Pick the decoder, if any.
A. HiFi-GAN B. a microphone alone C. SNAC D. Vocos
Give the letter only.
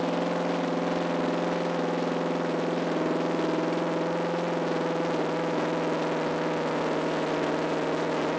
B